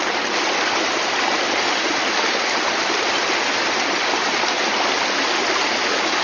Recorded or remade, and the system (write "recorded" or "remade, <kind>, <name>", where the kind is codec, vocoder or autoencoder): recorded